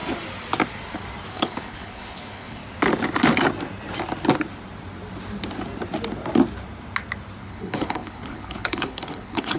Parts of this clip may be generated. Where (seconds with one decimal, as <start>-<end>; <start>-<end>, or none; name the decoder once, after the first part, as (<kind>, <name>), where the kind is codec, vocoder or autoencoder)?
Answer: 1.3-2.6 (codec, HILCodec); 7.4-9.6